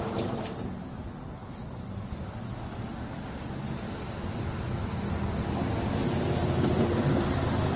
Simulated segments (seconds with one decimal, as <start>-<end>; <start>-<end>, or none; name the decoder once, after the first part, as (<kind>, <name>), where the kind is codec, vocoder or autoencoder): 1.4-2.8 (vocoder, BigVGAN v2)